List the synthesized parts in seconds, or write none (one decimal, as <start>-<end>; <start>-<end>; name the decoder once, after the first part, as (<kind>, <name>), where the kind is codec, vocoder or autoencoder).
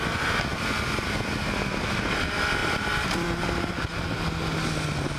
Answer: 0.5-1.4 (vocoder, BigVGAN v2); 2.6-3.7